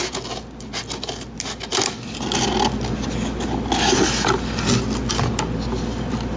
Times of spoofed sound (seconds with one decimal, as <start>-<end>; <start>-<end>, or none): none